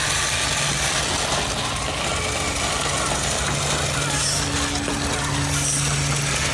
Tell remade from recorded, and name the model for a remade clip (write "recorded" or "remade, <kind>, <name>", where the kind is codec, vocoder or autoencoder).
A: recorded